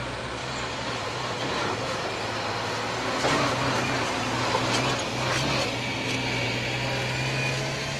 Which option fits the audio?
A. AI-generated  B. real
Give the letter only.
B